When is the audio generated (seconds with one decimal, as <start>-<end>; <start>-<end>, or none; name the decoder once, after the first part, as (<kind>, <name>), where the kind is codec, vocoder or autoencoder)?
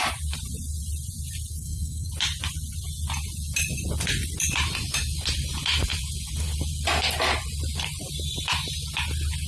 1.5-2.1 (codec, SNAC)